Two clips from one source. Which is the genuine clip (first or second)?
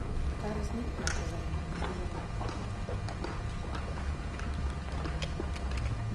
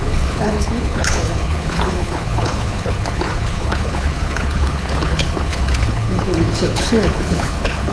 first